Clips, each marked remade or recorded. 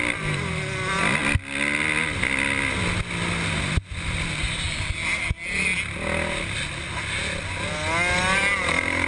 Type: recorded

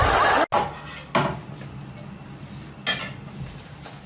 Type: recorded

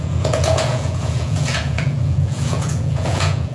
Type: remade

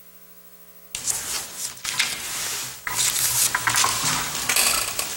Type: recorded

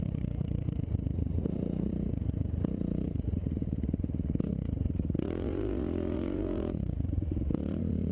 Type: remade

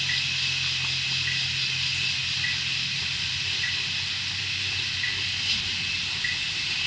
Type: recorded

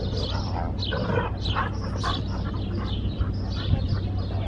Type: recorded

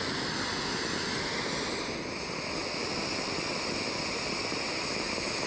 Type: recorded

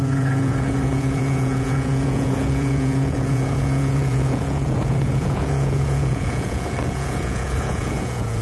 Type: remade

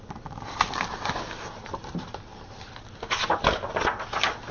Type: recorded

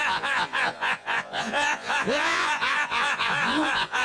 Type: remade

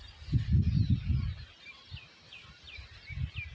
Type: recorded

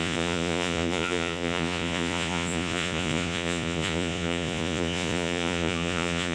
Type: remade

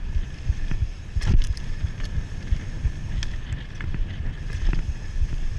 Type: recorded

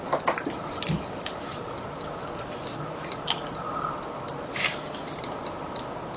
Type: recorded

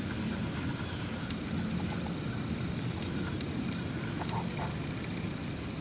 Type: recorded